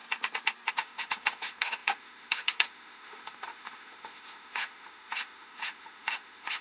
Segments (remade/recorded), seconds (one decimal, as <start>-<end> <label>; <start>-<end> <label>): 0.0-0.7 recorded; 0.7-6.6 remade

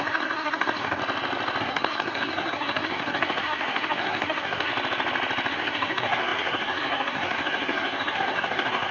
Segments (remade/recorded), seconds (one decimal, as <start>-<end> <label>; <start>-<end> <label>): 0.0-1.0 remade; 1.0-1.6 recorded; 1.6-4.7 remade; 4.7-5.5 recorded; 5.5-8.9 remade

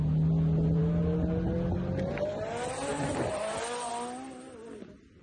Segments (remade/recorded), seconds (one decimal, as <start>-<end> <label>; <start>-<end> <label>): 0.0-5.2 recorded